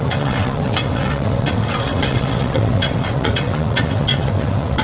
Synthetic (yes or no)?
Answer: yes